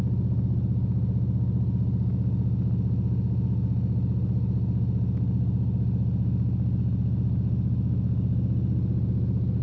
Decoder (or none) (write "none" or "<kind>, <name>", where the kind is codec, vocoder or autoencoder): none